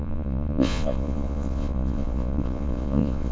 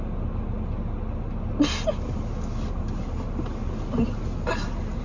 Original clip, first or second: second